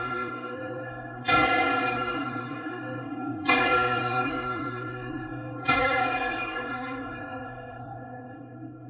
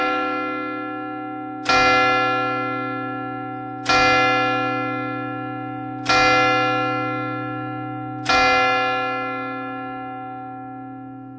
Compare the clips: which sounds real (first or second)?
second